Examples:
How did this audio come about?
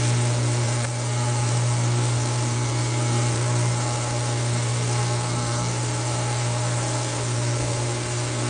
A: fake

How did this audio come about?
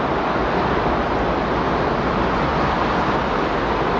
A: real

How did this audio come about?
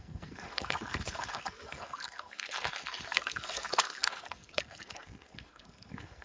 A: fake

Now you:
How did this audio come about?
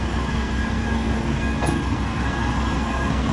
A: fake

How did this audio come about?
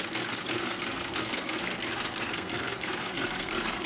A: fake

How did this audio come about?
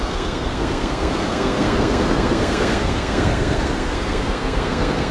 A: fake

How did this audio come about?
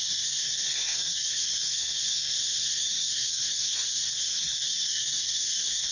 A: fake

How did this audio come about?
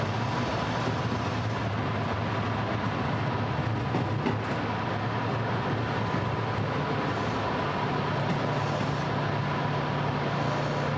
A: real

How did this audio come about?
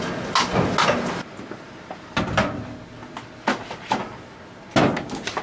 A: real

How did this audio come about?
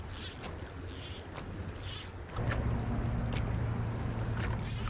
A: real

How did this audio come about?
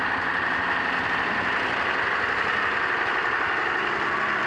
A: real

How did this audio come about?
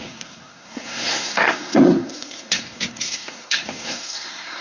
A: fake